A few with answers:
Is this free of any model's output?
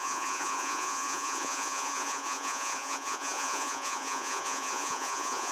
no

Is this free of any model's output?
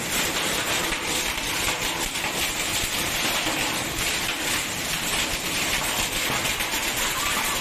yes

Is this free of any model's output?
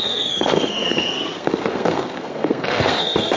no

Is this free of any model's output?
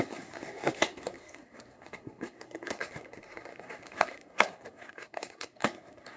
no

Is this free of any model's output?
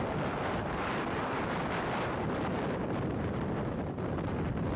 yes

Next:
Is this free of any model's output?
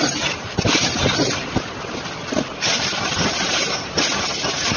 yes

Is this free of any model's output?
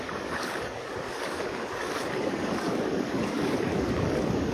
no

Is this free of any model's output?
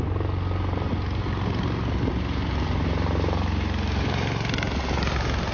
yes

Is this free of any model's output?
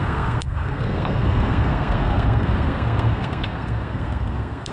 no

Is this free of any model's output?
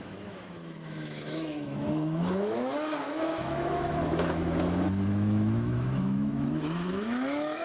no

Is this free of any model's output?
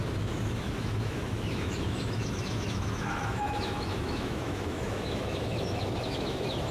no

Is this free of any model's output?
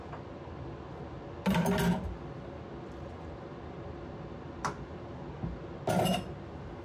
yes